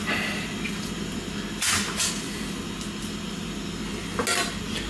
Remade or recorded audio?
recorded